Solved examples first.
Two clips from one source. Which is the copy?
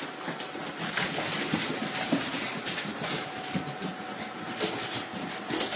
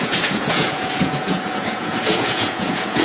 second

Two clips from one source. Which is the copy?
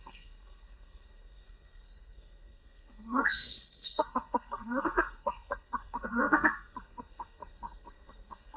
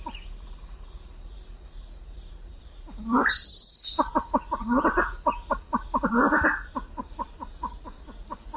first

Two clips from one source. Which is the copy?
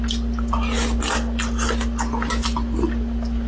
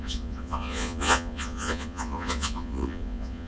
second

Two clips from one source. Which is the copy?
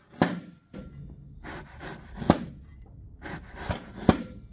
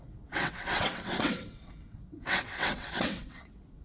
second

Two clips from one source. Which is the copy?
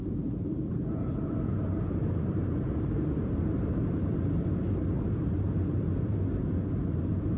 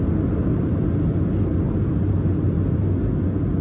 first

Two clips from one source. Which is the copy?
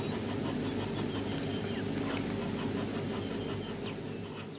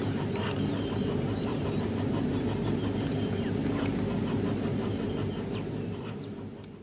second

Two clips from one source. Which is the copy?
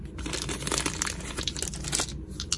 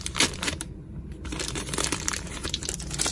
second